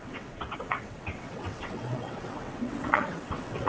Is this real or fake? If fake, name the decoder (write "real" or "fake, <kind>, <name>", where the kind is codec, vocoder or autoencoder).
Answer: fake, vocoder, WaveNeXt